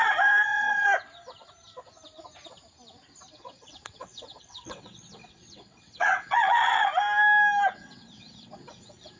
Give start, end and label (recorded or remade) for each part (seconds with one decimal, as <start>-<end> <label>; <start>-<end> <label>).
0.0-0.9 remade; 0.9-3.3 recorded; 3.3-6.9 remade; 6.9-7.8 recorded; 7.8-9.2 remade